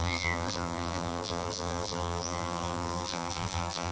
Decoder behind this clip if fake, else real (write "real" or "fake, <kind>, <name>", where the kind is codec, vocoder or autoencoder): fake, vocoder, BigVGAN v2